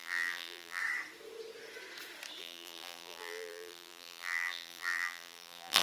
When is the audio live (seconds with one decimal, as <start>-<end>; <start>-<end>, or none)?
0.8-2.4

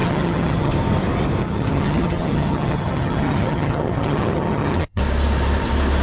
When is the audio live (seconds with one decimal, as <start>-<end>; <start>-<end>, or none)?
0.7-1.4; 5.0-6.0

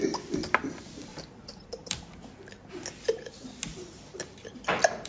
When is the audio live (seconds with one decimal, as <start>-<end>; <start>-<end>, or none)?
0.0-1.1; 2.0-3.7